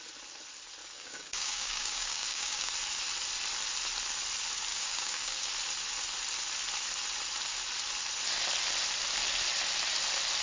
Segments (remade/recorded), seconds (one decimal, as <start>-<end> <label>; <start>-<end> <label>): 0.0-0.8 recorded; 0.8-2.7 remade; 2.7-4.7 recorded; 4.7-5.5 remade; 5.5-10.4 recorded